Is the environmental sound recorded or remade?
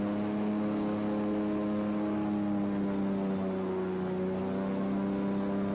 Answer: recorded